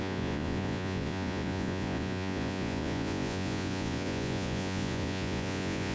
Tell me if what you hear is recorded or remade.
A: remade